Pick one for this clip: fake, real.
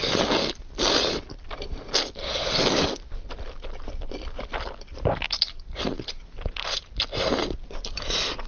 real